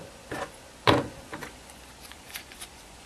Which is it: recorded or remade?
remade